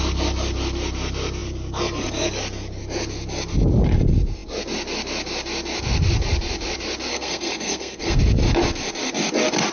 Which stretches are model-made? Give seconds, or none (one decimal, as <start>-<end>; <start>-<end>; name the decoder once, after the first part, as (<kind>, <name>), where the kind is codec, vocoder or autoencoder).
7.1-8.2 (codec, SNAC)